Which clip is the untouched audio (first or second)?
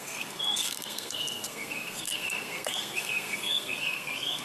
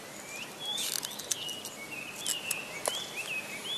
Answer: second